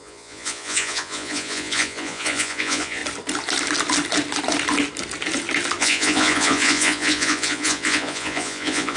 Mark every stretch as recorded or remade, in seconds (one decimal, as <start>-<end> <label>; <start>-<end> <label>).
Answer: 0.0-3.0 remade; 3.0-5.8 recorded; 5.8-9.0 remade